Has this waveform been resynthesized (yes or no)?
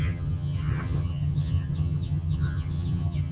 yes